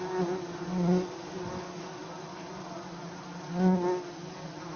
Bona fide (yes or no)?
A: yes